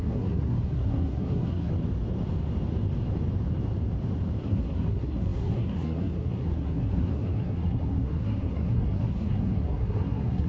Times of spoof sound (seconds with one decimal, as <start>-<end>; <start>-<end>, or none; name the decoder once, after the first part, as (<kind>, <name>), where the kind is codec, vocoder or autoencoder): 0.0-1.7 (codec, SNAC); 4.4-10.5